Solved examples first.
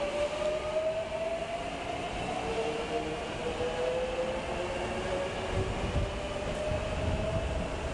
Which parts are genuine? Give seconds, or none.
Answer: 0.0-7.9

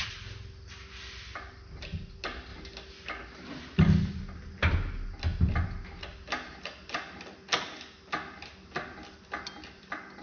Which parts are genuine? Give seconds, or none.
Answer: 0.0-10.2